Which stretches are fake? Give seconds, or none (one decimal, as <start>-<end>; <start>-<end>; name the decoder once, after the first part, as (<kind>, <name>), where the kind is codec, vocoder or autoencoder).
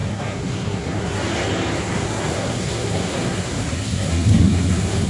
0.0-1.2 (codec, SNAC); 1.8-5.1